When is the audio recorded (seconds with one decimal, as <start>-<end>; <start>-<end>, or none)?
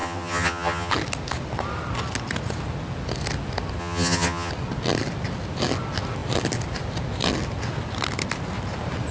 0.9-3.8; 4.5-9.1